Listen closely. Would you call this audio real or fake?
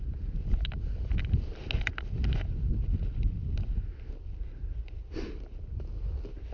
real